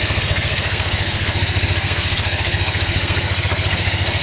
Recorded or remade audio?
remade